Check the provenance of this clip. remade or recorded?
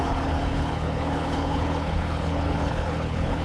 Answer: remade